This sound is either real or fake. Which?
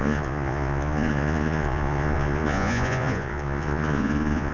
fake